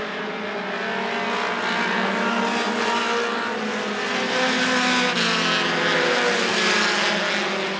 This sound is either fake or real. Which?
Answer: real